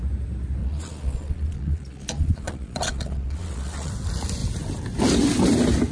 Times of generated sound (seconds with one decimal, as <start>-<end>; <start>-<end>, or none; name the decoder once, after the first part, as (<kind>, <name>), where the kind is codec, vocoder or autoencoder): 0.6-3.9 (vocoder, Vocos)